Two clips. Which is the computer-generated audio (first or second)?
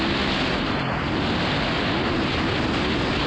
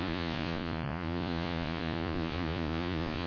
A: second